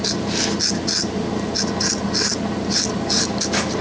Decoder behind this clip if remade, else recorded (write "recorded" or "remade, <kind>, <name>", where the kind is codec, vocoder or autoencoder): recorded